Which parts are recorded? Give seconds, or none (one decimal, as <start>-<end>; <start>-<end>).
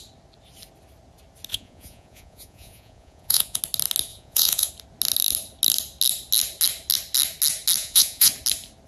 0.0-1.5; 3.6-4.1; 4.7-7.8; 8.3-8.9